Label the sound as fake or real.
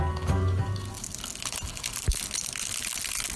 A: real